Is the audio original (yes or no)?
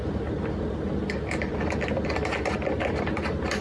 yes